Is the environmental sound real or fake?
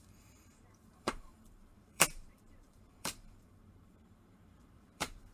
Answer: fake